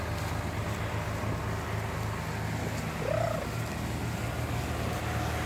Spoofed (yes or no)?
no